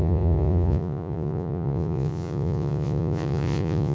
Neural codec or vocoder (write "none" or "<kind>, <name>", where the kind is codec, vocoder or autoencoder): vocoder, Vocos